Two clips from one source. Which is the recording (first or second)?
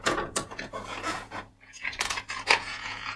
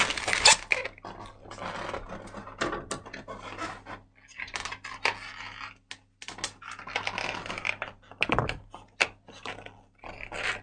second